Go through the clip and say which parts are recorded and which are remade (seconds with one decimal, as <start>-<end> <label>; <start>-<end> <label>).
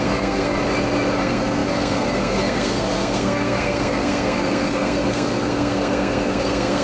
0.0-0.5 remade; 0.5-1.2 recorded; 1.2-6.8 remade